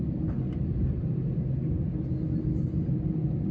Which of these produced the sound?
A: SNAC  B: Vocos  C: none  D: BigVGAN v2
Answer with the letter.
C